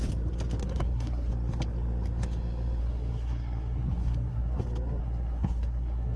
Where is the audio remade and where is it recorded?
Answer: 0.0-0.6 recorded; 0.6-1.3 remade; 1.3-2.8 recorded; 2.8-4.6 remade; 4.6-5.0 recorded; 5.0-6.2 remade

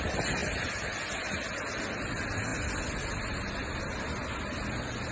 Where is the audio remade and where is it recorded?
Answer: 0.0-5.1 recorded

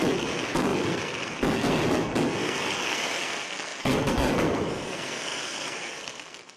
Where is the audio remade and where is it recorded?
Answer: 0.0-6.6 remade

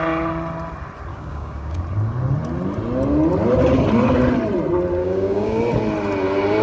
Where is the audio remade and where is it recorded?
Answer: 0.0-1.1 recorded; 1.1-1.8 remade; 1.8-5.0 recorded; 5.0-5.6 remade; 5.6-6.6 recorded

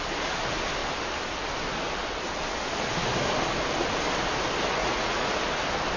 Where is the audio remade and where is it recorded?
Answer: 0.0-4.8 recorded; 4.8-5.3 remade; 5.3-6.0 recorded

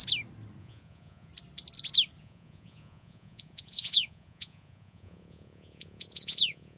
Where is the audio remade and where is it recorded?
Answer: 0.0-0.6 recorded; 0.6-1.3 remade; 1.3-2.2 recorded; 2.2-6.8 remade